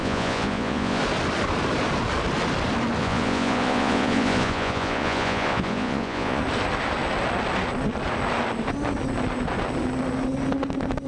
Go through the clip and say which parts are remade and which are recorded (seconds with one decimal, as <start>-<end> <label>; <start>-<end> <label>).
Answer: 0.0-1.0 remade; 1.0-3.0 recorded; 3.0-6.4 remade; 6.4-11.1 recorded